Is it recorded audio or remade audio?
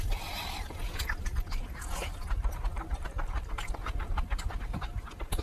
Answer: recorded